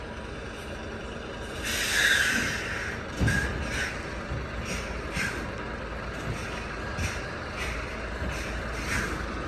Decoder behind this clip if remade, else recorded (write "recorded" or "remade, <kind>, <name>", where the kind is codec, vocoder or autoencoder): recorded